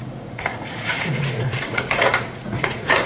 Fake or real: fake